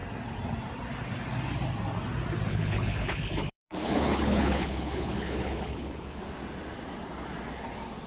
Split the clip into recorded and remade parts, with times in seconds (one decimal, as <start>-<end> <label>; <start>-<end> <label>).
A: 0.0-2.5 recorded; 2.5-6.2 remade; 6.2-8.1 recorded